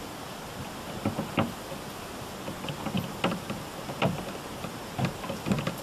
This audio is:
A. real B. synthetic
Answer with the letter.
A